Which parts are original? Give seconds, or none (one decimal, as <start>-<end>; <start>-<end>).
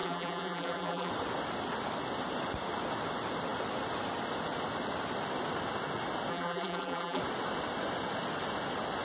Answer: 1.1-6.3; 7.2-9.0